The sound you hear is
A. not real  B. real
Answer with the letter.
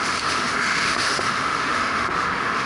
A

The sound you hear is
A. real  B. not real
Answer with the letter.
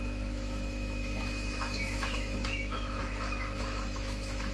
B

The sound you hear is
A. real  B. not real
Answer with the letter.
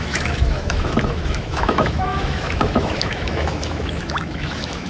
B